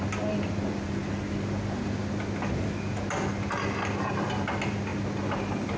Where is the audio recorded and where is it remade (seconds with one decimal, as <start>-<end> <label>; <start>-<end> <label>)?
0.0-5.8 recorded